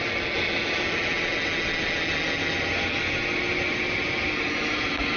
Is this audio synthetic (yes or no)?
no